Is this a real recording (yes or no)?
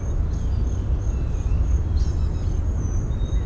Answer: yes